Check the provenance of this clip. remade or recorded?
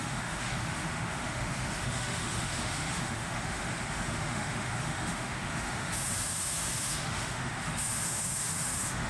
remade